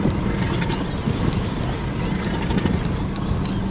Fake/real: real